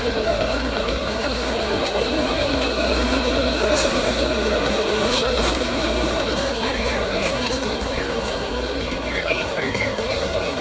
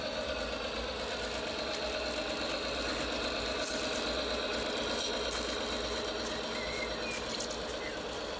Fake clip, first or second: first